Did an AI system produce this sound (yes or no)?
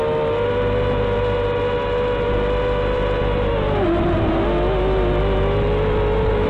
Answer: no